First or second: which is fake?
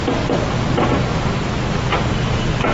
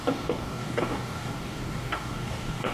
second